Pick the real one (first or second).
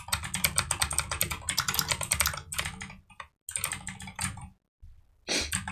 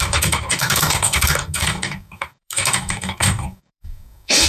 first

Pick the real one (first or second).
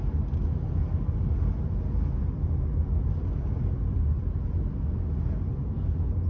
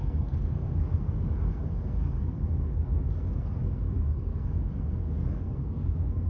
first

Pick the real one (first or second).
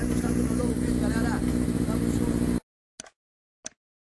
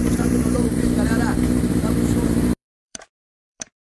first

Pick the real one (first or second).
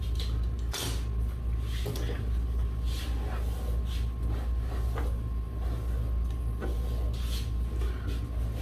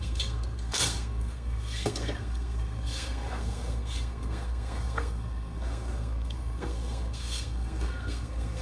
first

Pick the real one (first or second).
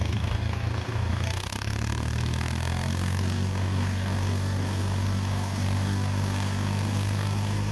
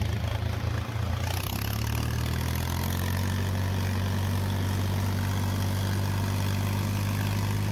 second